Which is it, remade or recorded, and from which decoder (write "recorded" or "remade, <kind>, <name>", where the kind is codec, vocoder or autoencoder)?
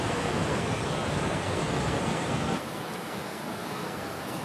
remade, codec, SNAC